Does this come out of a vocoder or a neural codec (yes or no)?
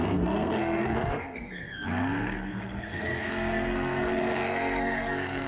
yes